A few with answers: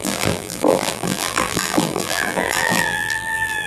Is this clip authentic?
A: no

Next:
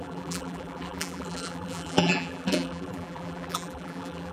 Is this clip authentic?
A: no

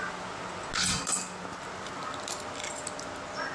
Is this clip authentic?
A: yes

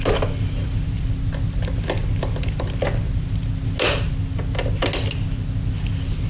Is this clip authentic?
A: yes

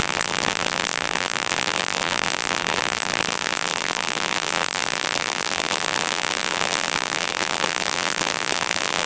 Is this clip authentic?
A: no